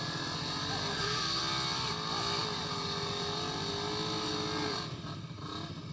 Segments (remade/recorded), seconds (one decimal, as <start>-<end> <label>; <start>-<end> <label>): 0.0-0.9 recorded; 0.9-1.4 remade; 1.4-5.9 recorded